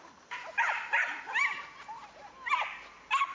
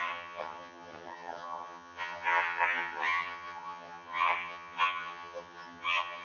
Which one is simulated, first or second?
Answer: second